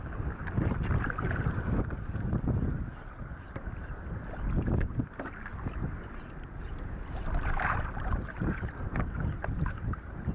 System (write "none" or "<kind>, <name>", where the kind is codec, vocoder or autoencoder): none